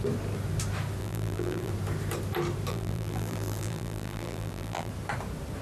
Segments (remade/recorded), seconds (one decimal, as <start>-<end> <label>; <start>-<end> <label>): 0.0-1.0 recorded; 1.0-1.7 remade; 1.7-2.7 recorded; 2.7-4.9 remade; 4.9-5.6 recorded

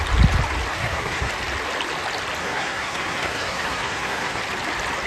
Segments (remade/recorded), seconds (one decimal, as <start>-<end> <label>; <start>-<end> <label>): 0.0-0.7 recorded; 0.7-1.3 remade; 1.3-2.4 recorded; 2.4-4.4 remade; 4.4-5.1 recorded

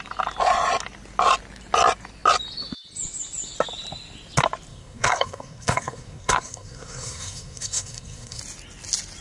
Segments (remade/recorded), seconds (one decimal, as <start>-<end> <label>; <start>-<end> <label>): 0.0-4.7 recorded; 4.7-8.4 remade; 8.4-9.2 recorded

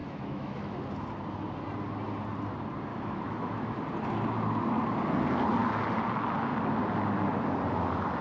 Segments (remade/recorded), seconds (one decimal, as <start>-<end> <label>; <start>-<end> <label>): 0.0-0.8 remade; 0.8-2.9 recorded; 2.9-3.8 remade; 3.8-8.2 recorded

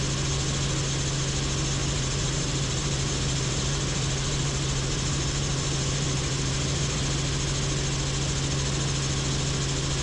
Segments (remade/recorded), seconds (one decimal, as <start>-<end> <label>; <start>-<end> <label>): 0.0-1.8 recorded; 1.8-7.0 remade; 7.0-10.0 recorded